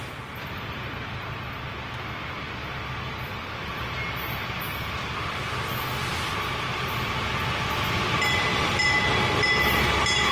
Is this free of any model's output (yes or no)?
yes